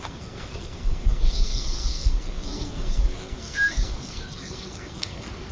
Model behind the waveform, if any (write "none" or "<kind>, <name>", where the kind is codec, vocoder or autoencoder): codec, SNAC